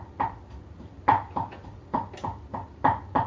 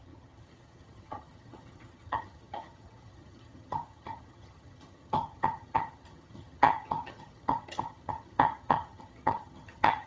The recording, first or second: first